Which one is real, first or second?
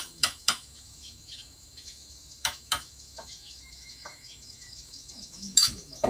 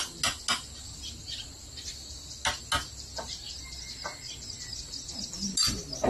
second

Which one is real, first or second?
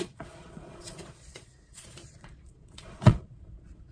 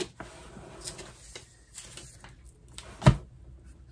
second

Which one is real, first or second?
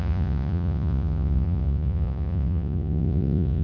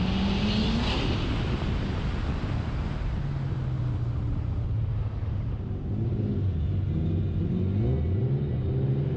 second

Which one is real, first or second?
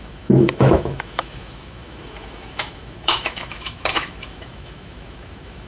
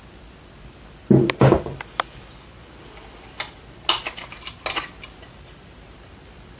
second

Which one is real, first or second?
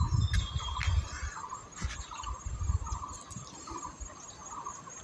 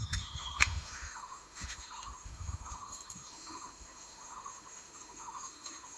first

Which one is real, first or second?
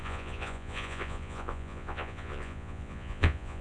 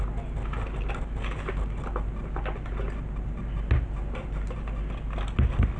second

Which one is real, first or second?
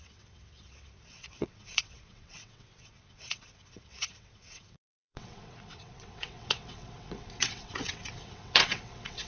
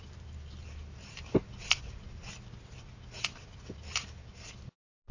second